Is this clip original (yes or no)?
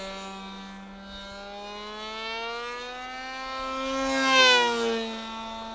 yes